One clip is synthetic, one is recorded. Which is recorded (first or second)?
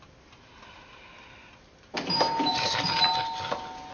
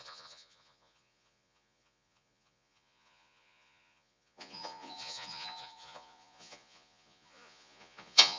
first